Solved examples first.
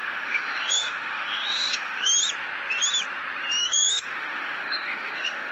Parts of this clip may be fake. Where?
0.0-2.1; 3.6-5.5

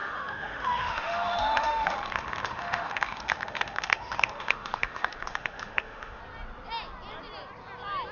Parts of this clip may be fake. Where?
0.0-6.2